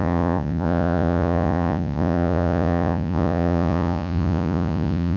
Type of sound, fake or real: fake